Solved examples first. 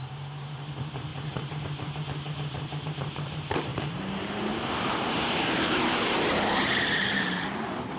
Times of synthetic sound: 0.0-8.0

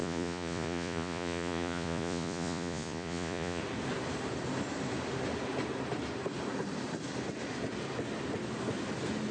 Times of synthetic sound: 0.0-3.6

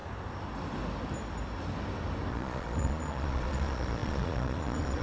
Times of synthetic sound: 2.3-5.0

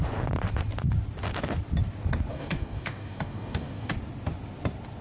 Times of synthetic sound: 2.3-3.9

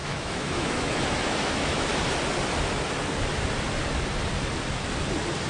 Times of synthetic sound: 0.0-1.9